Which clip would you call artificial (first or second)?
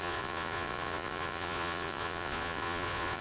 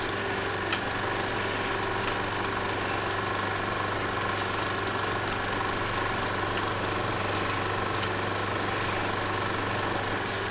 first